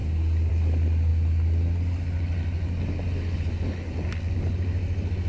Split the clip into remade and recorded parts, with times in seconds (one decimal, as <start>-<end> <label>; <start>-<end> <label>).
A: 0.0-5.3 recorded